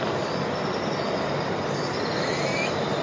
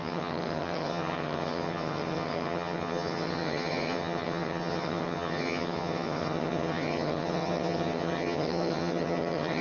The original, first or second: first